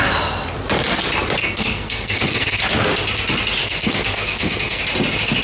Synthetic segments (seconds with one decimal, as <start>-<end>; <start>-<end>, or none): 1.4-2.6; 3.6-4.8